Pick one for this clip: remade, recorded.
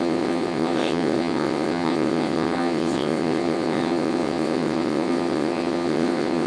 remade